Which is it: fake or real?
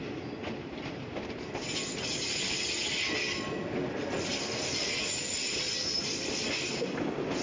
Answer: real